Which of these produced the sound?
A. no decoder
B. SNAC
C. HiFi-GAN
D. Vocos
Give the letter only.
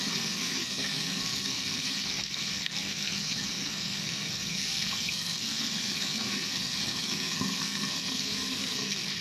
B